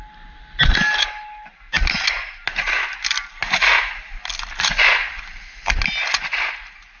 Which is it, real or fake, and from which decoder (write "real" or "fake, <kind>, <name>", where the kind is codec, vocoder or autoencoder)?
real